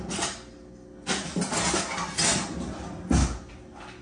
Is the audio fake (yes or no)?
no